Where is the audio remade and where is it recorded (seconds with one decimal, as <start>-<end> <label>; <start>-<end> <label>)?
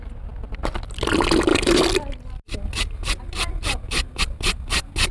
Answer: 0.0-5.1 recorded